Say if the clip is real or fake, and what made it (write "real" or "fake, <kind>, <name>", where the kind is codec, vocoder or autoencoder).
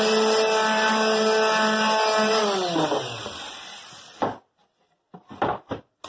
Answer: real